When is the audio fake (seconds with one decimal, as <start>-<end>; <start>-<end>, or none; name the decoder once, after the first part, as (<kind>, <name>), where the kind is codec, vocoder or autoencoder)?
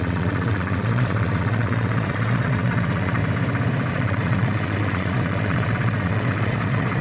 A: 0.0-3.2 (vocoder, Vocos); 3.9-7.0